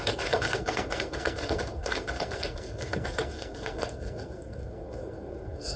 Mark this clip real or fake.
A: fake